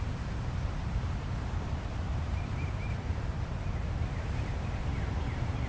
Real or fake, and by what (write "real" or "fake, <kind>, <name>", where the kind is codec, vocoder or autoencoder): fake, vocoder, BigVGAN v2